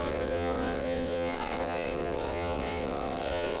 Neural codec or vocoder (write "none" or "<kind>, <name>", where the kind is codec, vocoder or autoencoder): vocoder, WaveNeXt